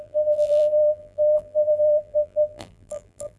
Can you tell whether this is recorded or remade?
remade